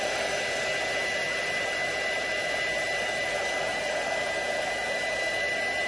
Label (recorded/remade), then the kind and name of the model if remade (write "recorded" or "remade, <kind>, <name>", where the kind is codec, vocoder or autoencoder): remade, vocoder, BigVGAN v2